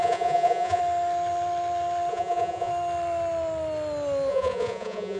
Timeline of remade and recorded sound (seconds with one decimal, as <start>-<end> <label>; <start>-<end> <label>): 0.0-0.8 remade; 0.8-2.1 recorded; 2.1-2.7 remade; 2.7-4.3 recorded; 4.3-5.2 remade